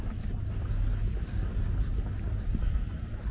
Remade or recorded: recorded